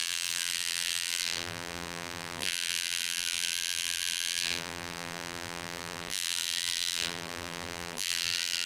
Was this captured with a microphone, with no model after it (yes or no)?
no